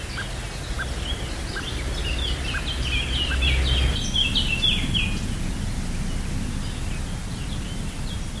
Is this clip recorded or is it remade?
recorded